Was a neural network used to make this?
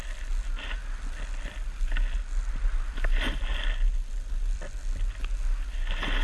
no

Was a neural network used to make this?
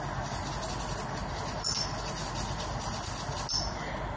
no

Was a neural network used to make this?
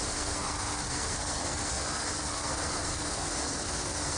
yes